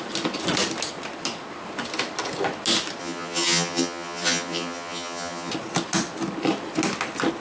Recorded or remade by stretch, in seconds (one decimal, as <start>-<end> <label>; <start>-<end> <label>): 0.0-3.0 recorded; 3.0-5.5 remade; 5.5-7.4 recorded